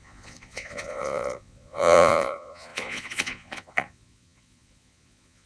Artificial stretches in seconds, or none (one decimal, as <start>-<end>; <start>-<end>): 0.0-5.5